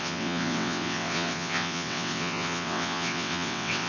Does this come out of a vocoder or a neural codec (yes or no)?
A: yes